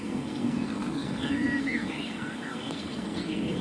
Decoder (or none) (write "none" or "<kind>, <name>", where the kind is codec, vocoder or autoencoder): codec, SNAC